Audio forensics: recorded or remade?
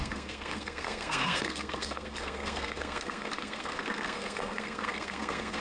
remade